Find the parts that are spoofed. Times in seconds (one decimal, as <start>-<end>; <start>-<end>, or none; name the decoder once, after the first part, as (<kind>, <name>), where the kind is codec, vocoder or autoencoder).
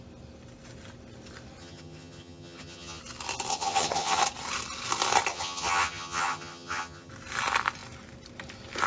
1.6-3.0 (vocoder, HiFi-GAN); 3.5-4.2; 5.3-7.1